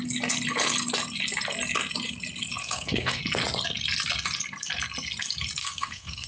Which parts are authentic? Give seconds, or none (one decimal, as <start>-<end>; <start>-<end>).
0.0-2.6; 3.2-5.6